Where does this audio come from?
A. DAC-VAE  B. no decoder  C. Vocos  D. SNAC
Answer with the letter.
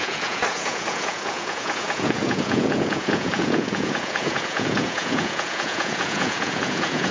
C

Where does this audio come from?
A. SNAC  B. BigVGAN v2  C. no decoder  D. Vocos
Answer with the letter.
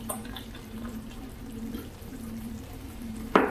B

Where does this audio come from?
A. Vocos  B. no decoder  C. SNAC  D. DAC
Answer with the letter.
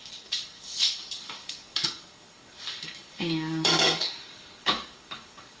D